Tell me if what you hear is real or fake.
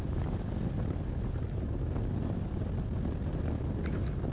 real